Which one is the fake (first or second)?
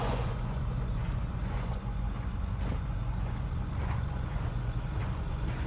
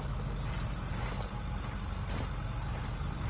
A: first